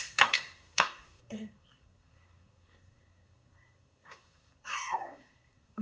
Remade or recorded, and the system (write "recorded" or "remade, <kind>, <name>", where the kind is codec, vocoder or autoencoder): remade, codec, SNAC